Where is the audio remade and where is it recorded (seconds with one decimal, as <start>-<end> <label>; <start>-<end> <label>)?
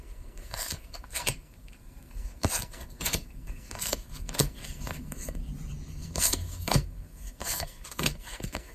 0.0-5.4 remade; 5.4-5.9 recorded; 5.9-8.7 remade